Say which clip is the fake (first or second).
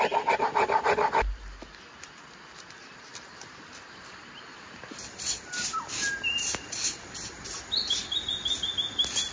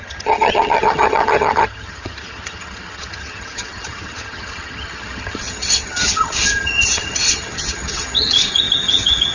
second